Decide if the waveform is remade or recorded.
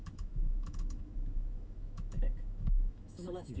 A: remade